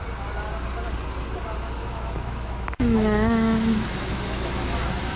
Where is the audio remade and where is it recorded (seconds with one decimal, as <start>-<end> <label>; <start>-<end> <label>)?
0.0-1.8 recorded; 1.8-5.2 remade